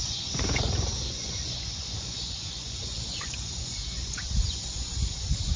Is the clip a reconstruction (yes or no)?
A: yes